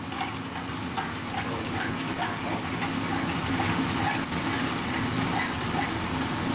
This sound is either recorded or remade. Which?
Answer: recorded